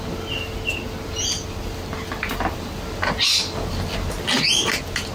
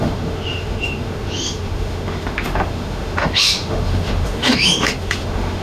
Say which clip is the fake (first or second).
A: second